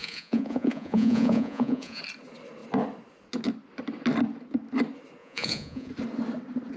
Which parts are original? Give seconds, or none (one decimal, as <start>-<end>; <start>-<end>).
2.0-5.2; 5.9-6.8